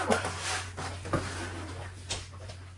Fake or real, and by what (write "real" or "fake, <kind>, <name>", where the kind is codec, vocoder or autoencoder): real